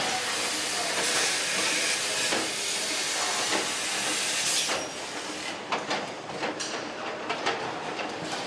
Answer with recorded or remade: recorded